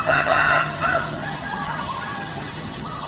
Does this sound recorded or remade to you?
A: remade